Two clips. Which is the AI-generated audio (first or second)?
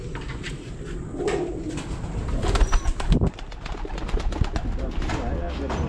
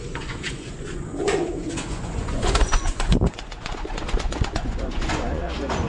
second